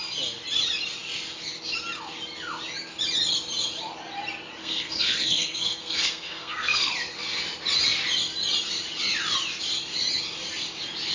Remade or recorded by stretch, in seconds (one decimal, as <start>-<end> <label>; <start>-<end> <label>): 0.0-4.6 recorded; 4.6-6.9 remade; 6.9-11.1 recorded